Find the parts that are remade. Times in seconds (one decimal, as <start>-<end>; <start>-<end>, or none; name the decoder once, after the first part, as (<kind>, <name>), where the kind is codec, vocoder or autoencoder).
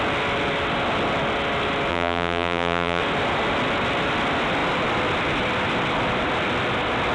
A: 1.9-3.0 (vocoder, BigVGAN v2)